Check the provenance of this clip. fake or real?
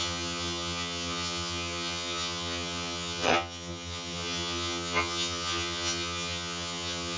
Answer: fake